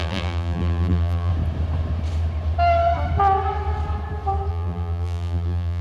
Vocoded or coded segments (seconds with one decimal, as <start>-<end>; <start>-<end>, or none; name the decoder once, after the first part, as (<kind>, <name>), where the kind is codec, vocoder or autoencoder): 0.0-1.3 (vocoder, BigVGAN v2); 4.5-5.8